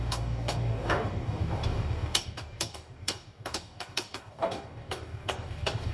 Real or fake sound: fake